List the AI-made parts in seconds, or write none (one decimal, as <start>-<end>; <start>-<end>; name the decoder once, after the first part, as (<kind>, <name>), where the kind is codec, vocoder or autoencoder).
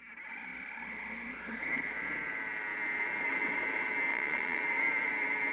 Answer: 4.1-4.6 (vocoder, Vocos)